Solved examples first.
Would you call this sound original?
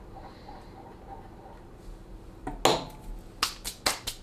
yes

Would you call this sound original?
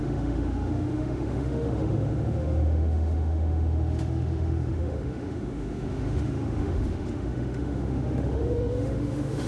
no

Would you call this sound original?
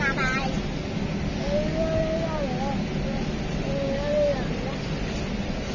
yes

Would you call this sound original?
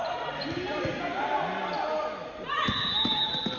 yes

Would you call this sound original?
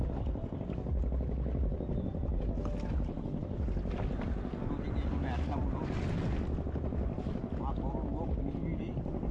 yes